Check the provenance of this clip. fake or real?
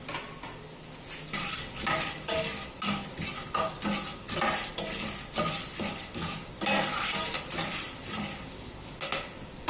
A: real